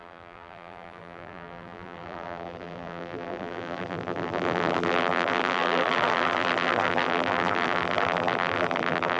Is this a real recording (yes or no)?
no